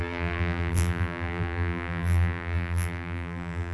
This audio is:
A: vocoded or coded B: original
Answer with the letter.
A